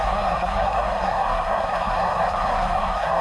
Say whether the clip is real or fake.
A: fake